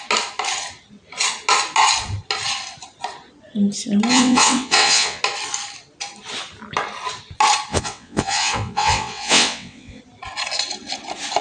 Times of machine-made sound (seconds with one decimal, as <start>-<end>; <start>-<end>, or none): 4.1-5.2; 7.7-10.0